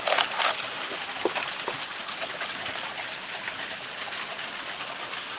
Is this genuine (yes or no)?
yes